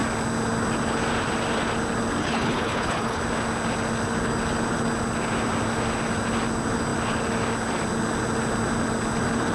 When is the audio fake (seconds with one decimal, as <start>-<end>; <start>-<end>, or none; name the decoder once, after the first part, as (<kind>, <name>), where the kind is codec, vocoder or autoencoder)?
2.2-3.2 (codec, HILCodec)